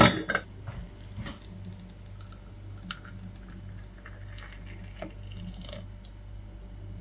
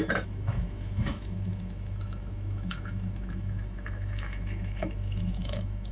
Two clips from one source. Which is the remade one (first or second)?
second